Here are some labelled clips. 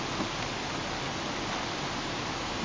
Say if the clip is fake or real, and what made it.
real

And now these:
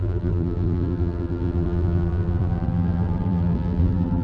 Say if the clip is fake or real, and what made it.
fake, vocoder, BigVGAN v2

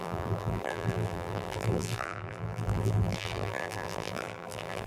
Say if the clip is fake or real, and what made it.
fake, vocoder, BigVGAN v2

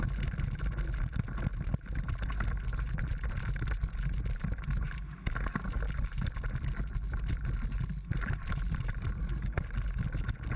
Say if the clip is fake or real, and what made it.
real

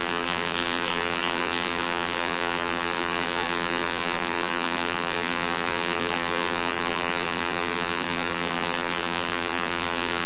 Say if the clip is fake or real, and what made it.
fake, vocoder, BigVGAN v2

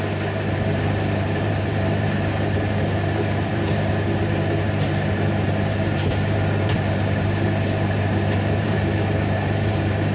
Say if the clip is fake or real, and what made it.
fake, vocoder, BigVGAN v2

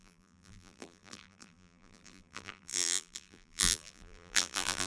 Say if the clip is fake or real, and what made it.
fake, vocoder, BigVGAN v2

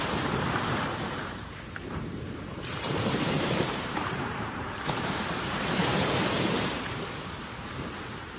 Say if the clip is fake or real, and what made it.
fake, vocoder, BigVGAN v2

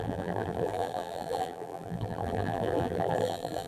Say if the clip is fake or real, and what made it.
fake, vocoder, BigVGAN v2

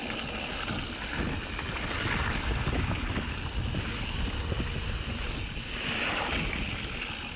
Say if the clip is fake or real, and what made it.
real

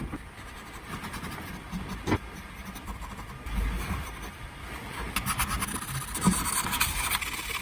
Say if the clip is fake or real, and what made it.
real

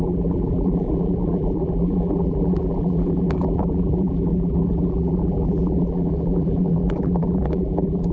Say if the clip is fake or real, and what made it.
fake, vocoder, BigVGAN v2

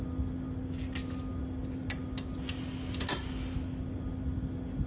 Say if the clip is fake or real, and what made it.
real